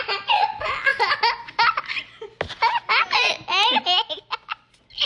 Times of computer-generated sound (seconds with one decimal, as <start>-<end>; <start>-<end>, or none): none

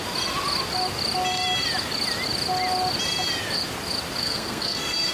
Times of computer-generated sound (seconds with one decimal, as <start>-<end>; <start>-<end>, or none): 4.2-5.1

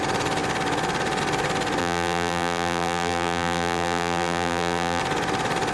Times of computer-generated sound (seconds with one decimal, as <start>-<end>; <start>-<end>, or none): 1.8-5.0